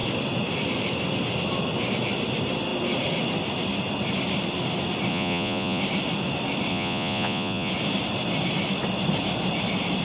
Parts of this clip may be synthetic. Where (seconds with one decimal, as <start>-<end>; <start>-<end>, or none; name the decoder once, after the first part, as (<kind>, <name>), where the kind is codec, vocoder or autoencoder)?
5.1-5.8 (vocoder, Vocos); 6.7-7.7